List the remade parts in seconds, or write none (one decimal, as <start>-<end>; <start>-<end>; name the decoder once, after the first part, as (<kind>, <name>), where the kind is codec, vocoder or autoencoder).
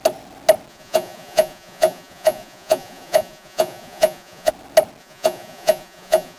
0.7-4.5 (vocoder, Vocos); 5.0-6.4